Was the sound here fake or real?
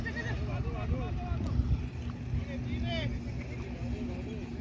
real